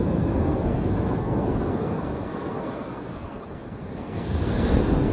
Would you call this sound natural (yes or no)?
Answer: no